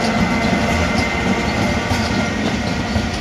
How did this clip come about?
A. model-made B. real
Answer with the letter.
B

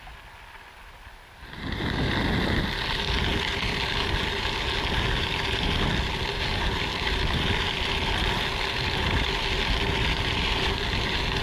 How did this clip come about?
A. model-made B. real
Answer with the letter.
B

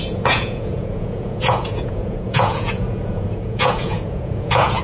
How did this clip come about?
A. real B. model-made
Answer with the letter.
B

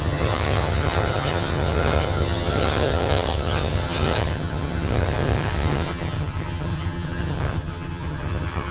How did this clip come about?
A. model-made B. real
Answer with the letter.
A